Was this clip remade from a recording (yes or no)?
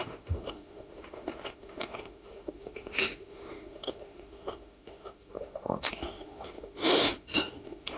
yes